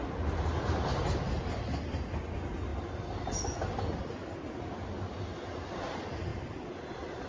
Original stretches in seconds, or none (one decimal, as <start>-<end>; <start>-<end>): 0.0-7.3